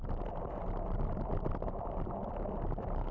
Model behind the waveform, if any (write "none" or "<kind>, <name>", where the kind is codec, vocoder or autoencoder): none